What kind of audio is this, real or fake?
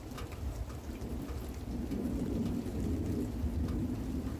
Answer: real